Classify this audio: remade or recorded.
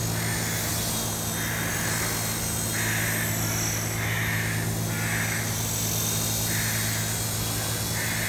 recorded